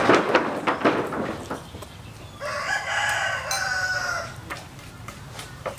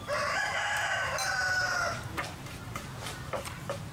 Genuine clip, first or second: first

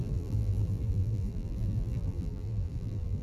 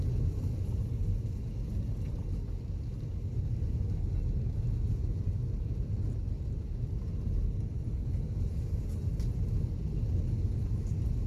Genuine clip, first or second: second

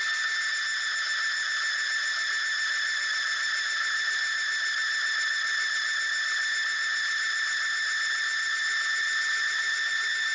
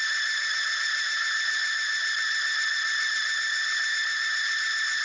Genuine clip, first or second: first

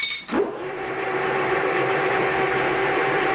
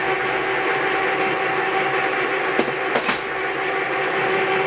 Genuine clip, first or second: second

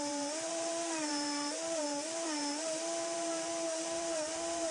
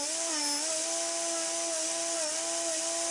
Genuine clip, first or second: second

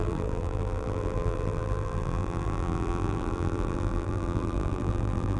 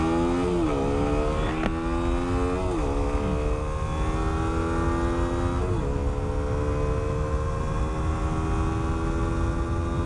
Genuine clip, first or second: second